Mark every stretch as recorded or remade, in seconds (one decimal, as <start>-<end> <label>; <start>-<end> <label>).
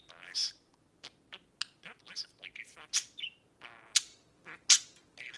0.0-5.4 recorded